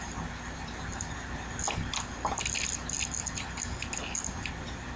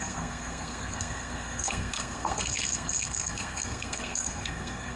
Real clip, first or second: first